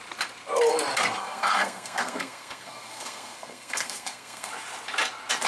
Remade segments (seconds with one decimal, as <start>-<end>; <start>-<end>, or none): 1.2-4.5